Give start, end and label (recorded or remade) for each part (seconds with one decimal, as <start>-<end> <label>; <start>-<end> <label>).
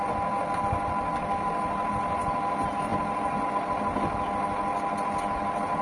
0.0-5.8 recorded